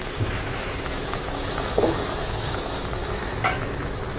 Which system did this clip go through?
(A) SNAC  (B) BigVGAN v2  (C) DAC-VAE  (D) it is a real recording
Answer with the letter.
C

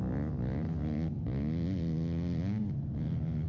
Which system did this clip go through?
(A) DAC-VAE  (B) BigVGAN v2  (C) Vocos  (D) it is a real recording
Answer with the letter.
D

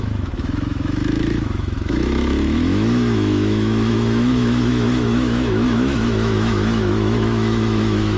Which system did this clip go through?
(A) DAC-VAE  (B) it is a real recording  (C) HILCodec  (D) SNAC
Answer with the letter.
A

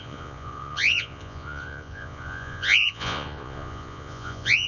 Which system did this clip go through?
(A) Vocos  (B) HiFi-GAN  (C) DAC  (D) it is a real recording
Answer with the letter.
A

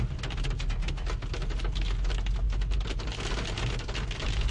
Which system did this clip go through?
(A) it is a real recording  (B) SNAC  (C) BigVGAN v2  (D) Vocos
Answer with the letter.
A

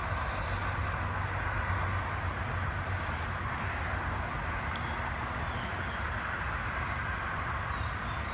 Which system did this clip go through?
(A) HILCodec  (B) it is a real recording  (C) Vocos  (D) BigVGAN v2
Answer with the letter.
B